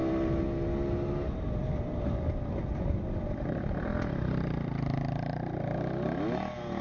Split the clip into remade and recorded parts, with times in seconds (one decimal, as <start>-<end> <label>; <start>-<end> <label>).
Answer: 0.0-6.8 recorded